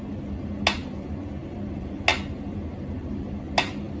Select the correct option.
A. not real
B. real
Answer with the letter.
B